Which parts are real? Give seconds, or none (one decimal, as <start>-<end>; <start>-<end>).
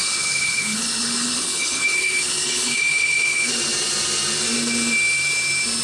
3.5-5.8